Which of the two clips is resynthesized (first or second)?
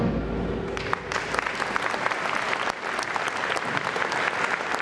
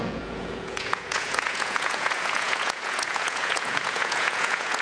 second